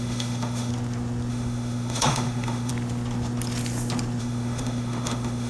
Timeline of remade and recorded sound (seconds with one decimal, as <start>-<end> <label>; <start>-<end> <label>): 0.0-0.7 remade; 0.7-1.3 recorded; 1.3-2.7 remade; 2.7-4.2 recorded; 4.2-5.5 remade